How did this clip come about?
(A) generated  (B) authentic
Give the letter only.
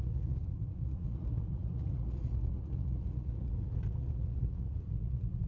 A